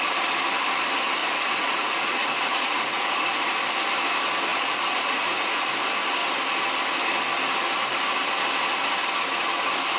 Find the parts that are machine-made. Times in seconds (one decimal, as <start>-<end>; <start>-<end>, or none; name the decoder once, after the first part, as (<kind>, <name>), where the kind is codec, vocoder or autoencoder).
1.2-3.1 (vocoder, Vocos); 4.5-5.7